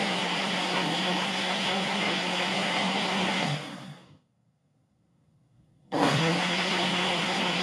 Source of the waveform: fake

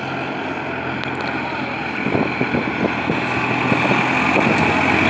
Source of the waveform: real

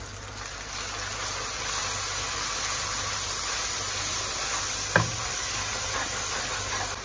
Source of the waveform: real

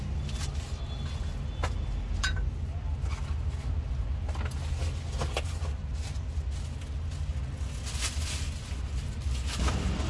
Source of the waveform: real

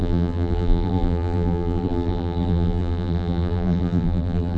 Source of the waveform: fake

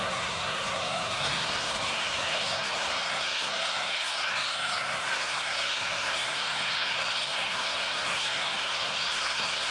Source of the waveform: fake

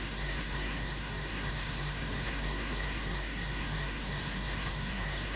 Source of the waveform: fake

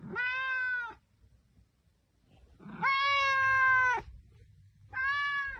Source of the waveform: real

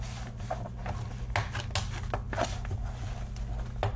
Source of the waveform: real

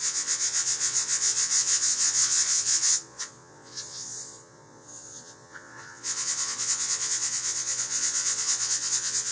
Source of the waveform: fake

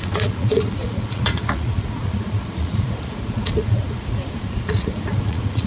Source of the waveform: fake